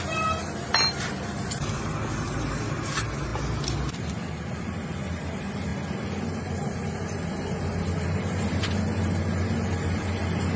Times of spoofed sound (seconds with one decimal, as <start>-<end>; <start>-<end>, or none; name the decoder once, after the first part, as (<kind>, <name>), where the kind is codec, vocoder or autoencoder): none

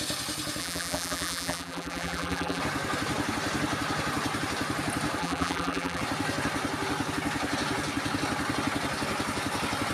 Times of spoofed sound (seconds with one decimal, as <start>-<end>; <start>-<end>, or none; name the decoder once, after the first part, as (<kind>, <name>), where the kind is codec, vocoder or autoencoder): 0.6-2.6 (vocoder, BigVGAN v2); 5.2-6.0

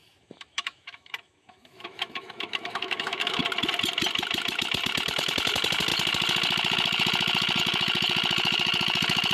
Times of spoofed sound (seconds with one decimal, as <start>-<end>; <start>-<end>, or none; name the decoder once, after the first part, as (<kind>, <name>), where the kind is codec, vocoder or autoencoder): 0.0-3.4 (autoencoder, DAC-VAE)

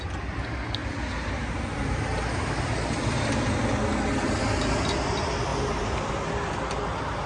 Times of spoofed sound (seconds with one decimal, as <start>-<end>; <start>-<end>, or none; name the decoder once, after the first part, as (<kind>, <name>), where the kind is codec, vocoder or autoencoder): 5.5-6.1 (vocoder, BigVGAN v2)

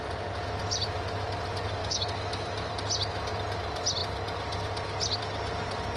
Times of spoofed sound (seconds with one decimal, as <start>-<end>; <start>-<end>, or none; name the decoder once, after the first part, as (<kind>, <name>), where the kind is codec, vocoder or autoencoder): 1.8-2.7 (autoencoder, DAC-VAE)

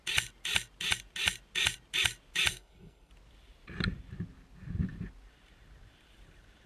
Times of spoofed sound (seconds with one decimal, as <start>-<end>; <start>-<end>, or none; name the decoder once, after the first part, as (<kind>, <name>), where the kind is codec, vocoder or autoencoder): 2.5-3.1 (codec, SNAC)

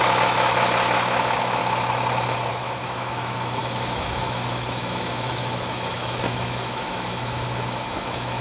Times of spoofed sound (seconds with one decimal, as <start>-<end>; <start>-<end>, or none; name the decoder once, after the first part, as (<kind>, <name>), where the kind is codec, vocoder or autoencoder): 0.0-1.6 (autoencoder, DAC-VAE); 2.5-8.4